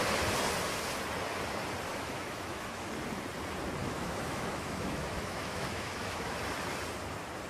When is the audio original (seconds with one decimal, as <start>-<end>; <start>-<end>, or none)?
0.0-1.9; 2.9-3.8; 6.4-7.5